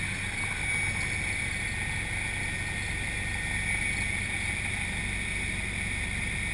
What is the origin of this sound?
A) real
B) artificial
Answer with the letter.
A